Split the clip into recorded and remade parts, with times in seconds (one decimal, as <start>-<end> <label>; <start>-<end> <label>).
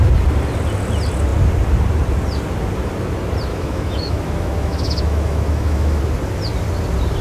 0.0-3.5 recorded; 3.5-6.0 remade; 6.0-7.2 recorded